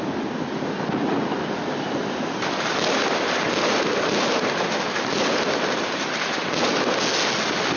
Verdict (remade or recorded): recorded